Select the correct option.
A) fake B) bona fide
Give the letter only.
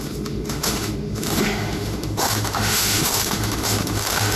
A